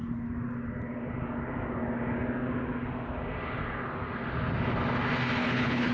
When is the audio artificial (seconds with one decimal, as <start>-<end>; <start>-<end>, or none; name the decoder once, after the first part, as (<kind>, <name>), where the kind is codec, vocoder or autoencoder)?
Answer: 5.4-5.9 (codec, HILCodec)